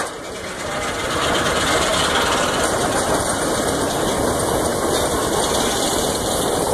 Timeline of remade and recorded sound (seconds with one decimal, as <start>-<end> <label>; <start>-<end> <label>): 0.0-1.9 remade; 1.9-2.8 recorded; 2.8-4.1 remade; 4.1-5.0 recorded; 5.0-6.7 remade